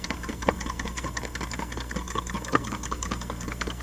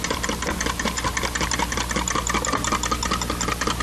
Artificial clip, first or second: first